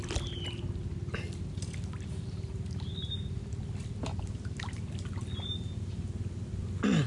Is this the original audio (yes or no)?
yes